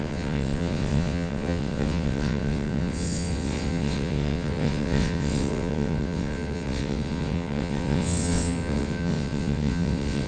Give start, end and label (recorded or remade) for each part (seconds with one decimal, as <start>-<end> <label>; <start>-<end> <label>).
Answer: 0.0-10.3 remade